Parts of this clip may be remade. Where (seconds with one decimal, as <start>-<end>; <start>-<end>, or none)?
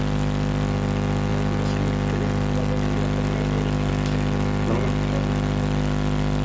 none